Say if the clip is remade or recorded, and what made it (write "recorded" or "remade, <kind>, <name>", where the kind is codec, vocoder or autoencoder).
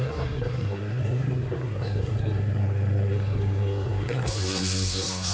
remade, codec, SNAC